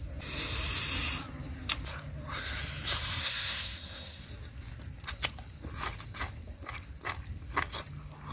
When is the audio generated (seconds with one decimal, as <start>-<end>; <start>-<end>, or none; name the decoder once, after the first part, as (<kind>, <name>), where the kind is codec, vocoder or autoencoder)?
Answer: 3.2-4.2 (codec, SNAC)